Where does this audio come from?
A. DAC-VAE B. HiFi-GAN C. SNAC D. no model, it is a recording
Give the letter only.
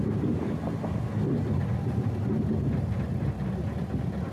D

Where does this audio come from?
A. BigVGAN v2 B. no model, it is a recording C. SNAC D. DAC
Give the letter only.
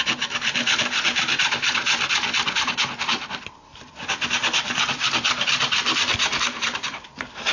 A